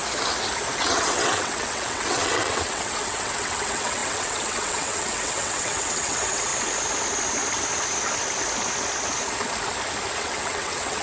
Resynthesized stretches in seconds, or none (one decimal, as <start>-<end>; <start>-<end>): 0.8-6.5; 10.2-11.0